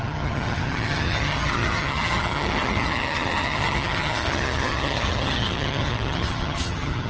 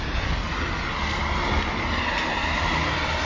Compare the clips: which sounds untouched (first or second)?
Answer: second